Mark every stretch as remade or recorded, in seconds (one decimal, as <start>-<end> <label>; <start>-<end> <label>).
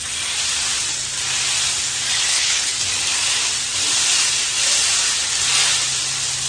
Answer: 0.0-2.2 recorded; 2.2-2.7 remade; 2.7-6.5 recorded